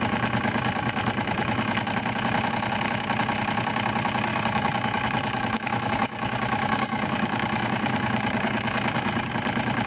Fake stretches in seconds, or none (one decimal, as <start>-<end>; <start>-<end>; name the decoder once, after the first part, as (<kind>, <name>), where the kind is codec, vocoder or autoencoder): 4.3-9.3 (codec, DAC)